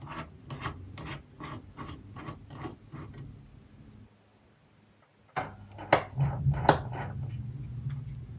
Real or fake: real